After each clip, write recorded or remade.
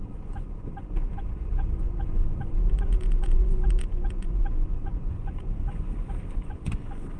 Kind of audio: remade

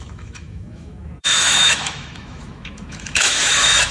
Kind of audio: remade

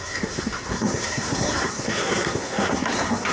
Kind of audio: remade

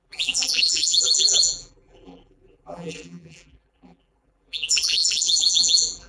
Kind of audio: remade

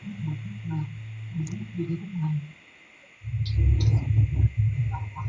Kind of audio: recorded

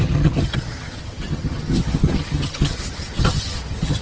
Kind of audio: remade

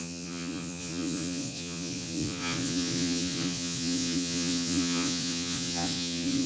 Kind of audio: remade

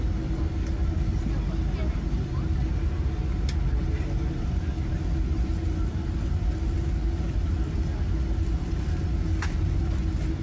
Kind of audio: recorded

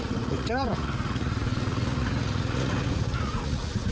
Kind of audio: remade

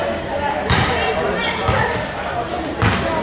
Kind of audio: recorded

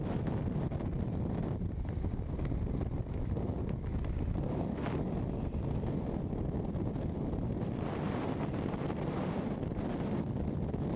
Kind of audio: recorded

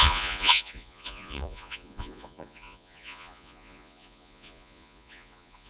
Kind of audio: remade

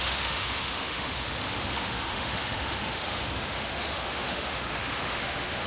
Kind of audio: remade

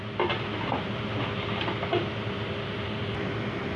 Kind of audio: recorded